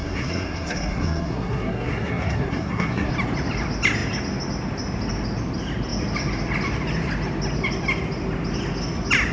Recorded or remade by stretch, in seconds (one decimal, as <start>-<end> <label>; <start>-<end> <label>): 0.0-3.1 remade; 3.1-9.3 recorded